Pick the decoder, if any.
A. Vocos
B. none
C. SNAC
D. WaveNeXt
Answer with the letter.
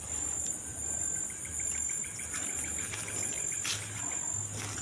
B